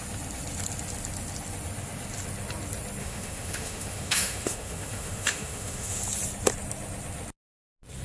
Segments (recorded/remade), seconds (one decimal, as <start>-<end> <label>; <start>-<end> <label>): 0.0-3.0 recorded; 3.0-6.0 remade; 6.0-8.0 recorded